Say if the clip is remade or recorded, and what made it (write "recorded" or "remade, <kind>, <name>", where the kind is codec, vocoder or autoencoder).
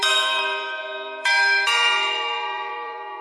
remade, vocoder, BigVGAN v2